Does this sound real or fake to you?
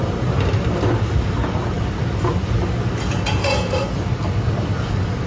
real